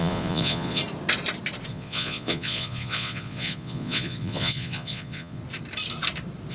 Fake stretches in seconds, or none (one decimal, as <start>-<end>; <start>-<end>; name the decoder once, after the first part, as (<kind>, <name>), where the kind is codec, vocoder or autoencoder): 0.0-0.8 (vocoder, Vocos); 1.7-5.4